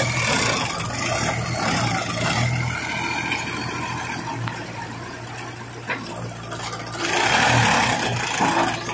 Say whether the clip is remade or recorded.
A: recorded